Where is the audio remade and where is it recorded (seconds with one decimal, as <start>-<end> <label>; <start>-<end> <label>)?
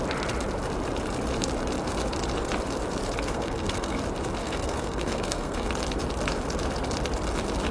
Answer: 0.0-3.3 recorded; 3.3-4.0 remade; 4.0-4.4 recorded; 4.4-5.7 remade; 5.7-7.7 recorded